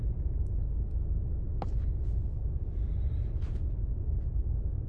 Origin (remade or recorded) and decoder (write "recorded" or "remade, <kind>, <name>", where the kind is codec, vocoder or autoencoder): remade, vocoder, BigVGAN v2